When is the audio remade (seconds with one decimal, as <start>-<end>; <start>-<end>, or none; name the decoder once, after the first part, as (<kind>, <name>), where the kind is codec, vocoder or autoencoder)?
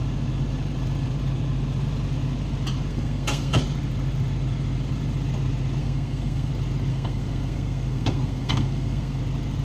2.9-3.6 (codec, SNAC); 5.8-6.5; 6.9-9.2